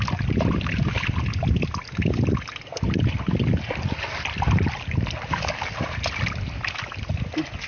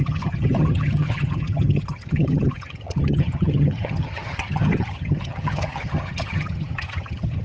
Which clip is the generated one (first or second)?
second